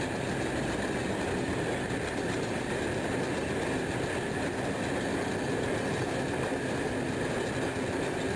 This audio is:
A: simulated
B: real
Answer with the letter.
B